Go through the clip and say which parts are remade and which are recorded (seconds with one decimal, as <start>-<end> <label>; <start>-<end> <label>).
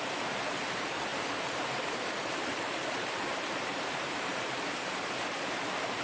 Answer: 0.0-1.1 recorded; 1.1-4.7 remade; 4.7-6.0 recorded